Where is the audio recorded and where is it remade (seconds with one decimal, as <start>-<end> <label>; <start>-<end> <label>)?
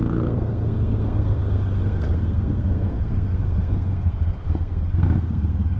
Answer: 0.0-5.8 remade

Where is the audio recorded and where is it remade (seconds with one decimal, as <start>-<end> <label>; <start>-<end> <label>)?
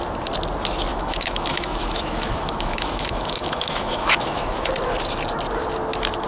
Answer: 0.0-0.9 recorded; 0.9-4.7 remade; 4.7-6.3 recorded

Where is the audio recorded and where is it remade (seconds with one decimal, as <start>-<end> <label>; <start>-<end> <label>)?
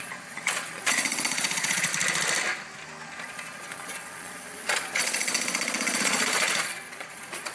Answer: 0.0-1.9 remade; 1.9-3.2 recorded; 3.2-7.5 remade